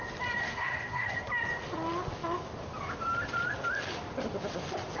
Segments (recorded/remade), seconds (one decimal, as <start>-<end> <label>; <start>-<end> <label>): 0.0-0.4 recorded; 0.4-1.3 remade; 1.3-5.0 recorded